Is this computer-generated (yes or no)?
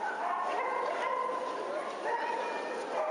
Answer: no